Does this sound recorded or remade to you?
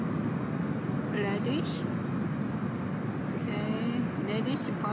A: recorded